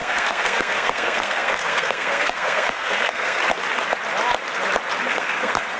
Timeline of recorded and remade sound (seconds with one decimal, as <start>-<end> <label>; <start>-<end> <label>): 0.0-3.4 remade; 3.4-5.1 recorded; 5.1-5.8 remade